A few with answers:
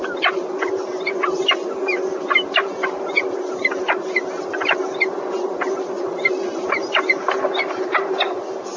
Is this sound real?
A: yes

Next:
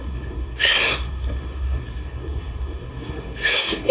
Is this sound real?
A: no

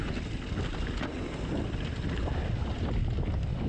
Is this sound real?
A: yes